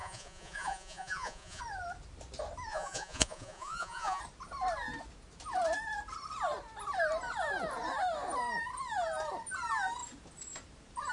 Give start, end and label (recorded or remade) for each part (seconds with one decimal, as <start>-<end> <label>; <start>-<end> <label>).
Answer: 0.0-1.6 remade; 1.6-2.7 recorded; 2.7-4.2 remade; 4.2-11.1 recorded